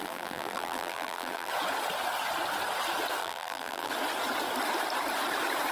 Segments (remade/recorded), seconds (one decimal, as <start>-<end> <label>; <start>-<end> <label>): 0.0-1.5 remade; 1.5-3.2 recorded; 3.2-3.9 remade; 3.9-5.7 recorded